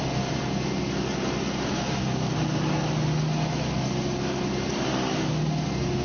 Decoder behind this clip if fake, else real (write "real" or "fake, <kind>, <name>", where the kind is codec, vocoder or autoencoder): real